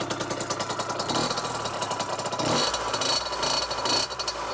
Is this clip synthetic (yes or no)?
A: no